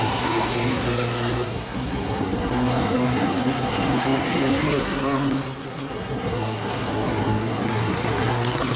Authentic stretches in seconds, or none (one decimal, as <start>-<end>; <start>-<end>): none